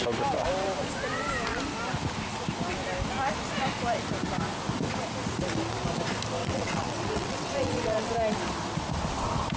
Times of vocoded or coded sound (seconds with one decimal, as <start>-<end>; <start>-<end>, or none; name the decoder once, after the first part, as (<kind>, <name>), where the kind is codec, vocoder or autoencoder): 6.4-8.1 (vocoder, WaveNeXt)